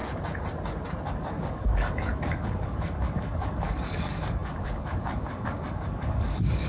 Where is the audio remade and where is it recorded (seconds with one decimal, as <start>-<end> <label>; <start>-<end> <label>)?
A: 0.0-1.1 recorded; 1.1-6.7 remade